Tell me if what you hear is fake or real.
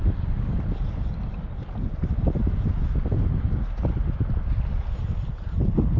real